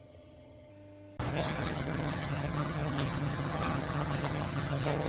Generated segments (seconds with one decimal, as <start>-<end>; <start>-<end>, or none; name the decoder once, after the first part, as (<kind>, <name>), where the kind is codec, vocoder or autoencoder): 0.0-0.7 (vocoder, HiFi-GAN); 1.3-5.1